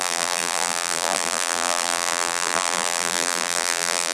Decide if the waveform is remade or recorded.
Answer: remade